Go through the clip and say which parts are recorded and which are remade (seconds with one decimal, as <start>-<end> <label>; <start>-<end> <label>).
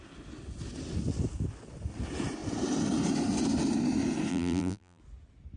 0.0-4.3 recorded; 4.3-5.0 remade; 5.0-5.6 recorded